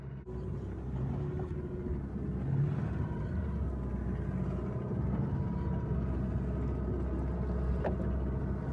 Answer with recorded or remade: recorded